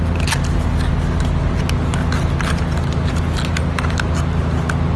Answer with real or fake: real